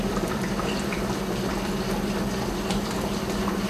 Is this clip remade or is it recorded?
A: remade